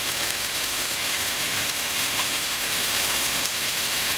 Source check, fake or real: fake